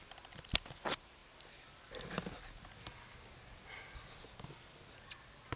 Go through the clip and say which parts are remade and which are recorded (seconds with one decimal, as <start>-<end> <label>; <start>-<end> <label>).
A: 0.0-5.6 recorded